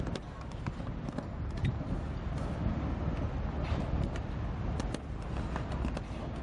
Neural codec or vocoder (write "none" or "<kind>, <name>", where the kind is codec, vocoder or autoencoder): none